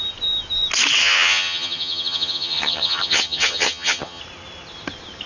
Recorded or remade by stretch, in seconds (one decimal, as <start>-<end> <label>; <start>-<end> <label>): 0.0-1.0 recorded; 1.0-4.2 remade; 4.2-5.3 recorded